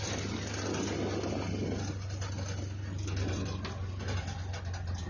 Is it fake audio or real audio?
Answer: real